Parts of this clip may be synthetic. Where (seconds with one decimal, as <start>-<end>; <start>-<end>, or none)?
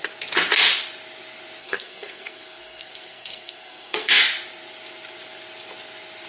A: 1.6-4.2